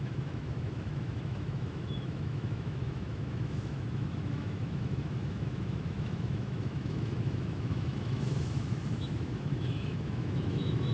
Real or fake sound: fake